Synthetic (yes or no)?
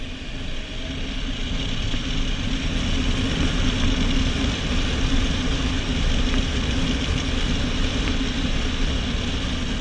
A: no